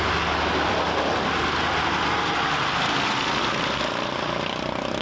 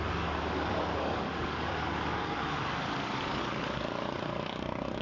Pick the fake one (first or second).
second